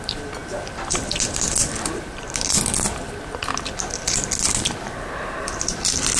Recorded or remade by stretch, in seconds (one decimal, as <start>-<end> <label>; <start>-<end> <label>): 0.0-6.2 recorded